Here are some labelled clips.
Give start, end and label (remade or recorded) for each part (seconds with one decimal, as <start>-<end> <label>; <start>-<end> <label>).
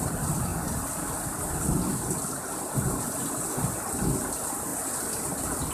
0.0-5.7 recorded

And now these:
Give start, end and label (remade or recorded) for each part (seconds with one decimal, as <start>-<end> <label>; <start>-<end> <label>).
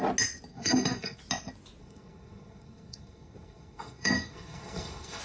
0.0-0.5 recorded; 0.5-1.2 remade; 1.2-1.8 recorded; 1.8-5.2 remade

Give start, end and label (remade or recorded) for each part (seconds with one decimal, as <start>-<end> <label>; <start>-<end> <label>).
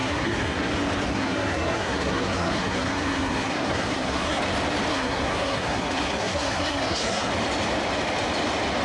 0.0-0.7 remade; 0.7-1.1 recorded; 1.1-4.4 remade; 4.4-4.9 recorded; 4.9-7.3 remade; 7.3-8.8 recorded